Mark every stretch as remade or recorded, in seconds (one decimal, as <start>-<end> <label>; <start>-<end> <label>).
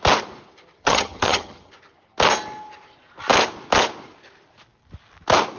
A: 0.0-0.8 recorded; 0.8-1.7 remade; 1.7-5.6 recorded